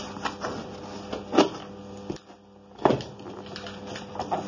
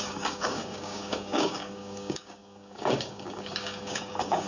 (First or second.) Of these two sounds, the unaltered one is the first